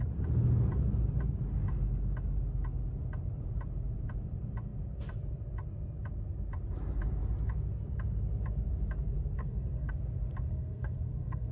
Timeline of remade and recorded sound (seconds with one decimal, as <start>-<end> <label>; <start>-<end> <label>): 0.0-9.4 recorded; 9.4-9.9 remade; 9.9-10.5 recorded; 10.5-11.5 remade